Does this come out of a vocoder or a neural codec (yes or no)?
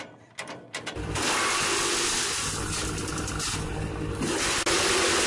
no